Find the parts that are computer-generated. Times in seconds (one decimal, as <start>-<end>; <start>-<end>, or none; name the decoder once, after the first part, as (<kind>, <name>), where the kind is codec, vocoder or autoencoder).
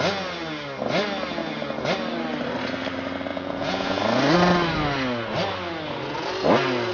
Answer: 3.3-4.0 (vocoder, Vocos)